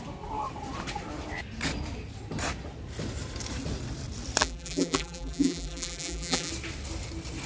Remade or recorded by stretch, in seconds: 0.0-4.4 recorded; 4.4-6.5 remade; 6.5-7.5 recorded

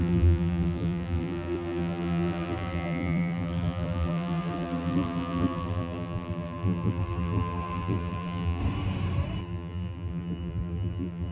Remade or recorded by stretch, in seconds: 0.0-8.6 remade; 8.6-9.4 recorded; 9.4-11.3 remade

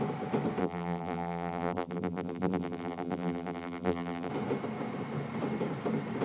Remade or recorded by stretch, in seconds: 0.0-0.6 recorded; 0.6-4.3 remade; 4.3-6.2 recorded

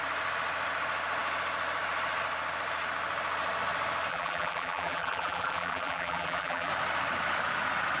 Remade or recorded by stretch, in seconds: 0.0-4.1 recorded; 4.1-6.7 remade; 6.7-8.0 recorded

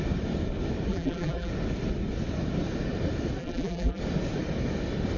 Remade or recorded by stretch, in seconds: 0.0-0.9 recorded; 0.9-1.5 remade; 1.5-3.4 recorded; 3.4-4.0 remade; 4.0-5.2 recorded

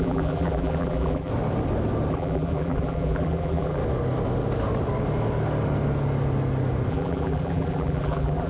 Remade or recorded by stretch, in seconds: 0.0-1.3 remade; 1.3-2.1 recorded; 2.1-3.8 remade; 3.8-6.9 recorded; 6.9-8.5 remade

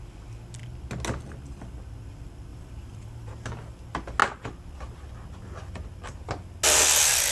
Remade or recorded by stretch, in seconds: 0.0-2.5 recorded; 2.5-3.3 remade; 3.3-7.3 recorded

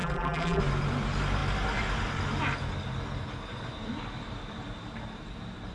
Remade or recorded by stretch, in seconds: 0.0-0.6 remade; 0.6-5.7 recorded